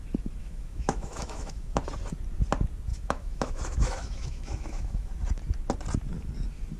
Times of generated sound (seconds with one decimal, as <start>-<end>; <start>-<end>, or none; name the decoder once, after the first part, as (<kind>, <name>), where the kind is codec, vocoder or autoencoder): 0.4-1.8 (autoencoder, DAC-VAE); 2.9-5.1